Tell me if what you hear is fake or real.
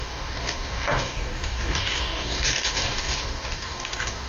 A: fake